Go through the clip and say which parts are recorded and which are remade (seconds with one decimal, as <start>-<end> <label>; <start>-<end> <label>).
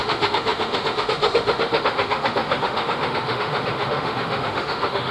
0.0-5.1 remade